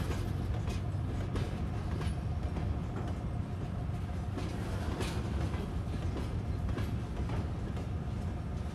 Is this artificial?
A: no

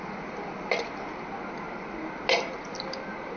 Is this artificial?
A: no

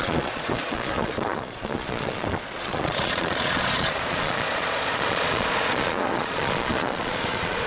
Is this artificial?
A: yes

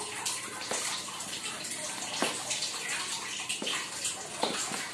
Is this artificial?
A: no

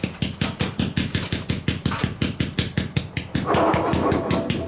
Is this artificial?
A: no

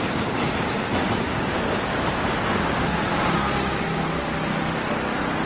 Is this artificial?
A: no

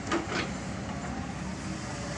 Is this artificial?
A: no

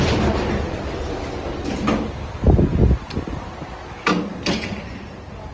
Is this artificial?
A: no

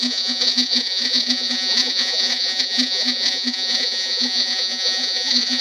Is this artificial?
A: yes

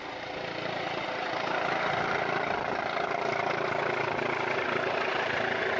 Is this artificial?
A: no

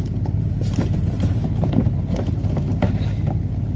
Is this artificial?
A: no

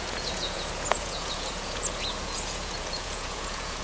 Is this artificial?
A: yes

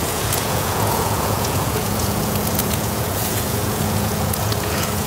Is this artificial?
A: yes